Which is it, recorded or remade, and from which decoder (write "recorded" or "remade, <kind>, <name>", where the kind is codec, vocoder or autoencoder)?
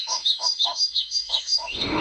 remade, autoencoder, DAC-VAE